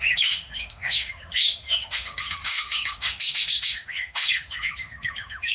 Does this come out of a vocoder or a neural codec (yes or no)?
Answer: yes